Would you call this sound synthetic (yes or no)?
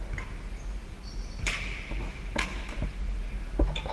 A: no